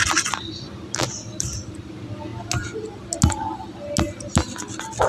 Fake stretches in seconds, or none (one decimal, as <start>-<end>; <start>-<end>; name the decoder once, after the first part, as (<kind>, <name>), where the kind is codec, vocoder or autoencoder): 0.0-2.3 (vocoder, BigVGAN v2)